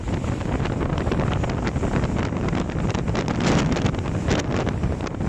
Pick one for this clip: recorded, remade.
recorded